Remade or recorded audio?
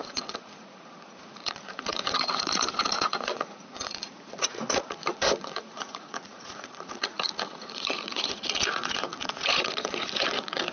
remade